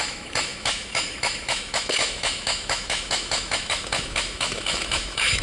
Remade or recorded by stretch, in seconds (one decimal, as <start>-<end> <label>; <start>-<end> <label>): 0.0-5.4 remade